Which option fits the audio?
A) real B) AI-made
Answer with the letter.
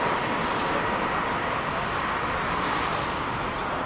A